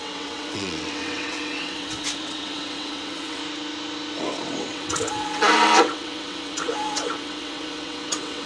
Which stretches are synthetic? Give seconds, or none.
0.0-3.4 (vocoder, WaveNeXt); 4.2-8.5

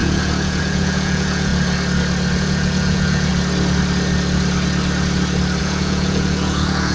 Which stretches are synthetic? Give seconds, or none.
0.0-1.5 (vocoder, Vocos); 2.4-3.3; 5.6-6.9